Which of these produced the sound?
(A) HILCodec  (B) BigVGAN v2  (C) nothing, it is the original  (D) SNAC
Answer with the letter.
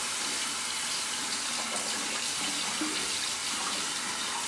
C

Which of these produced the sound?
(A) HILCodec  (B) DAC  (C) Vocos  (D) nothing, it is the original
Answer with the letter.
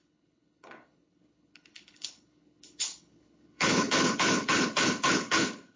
A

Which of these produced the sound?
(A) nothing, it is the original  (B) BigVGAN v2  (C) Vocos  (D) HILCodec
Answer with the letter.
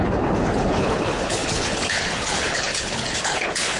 D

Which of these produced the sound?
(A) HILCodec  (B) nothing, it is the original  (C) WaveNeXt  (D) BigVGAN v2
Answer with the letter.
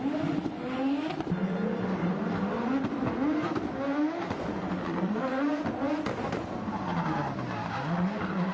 B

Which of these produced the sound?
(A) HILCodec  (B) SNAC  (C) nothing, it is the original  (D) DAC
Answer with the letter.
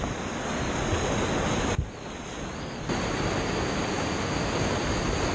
C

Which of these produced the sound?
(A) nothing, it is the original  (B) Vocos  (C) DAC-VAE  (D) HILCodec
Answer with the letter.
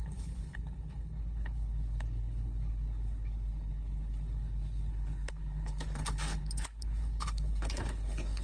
D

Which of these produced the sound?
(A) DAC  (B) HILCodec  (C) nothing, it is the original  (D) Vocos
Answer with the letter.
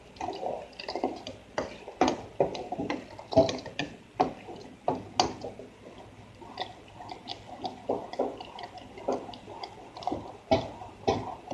C